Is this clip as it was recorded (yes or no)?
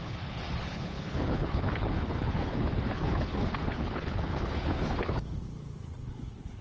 no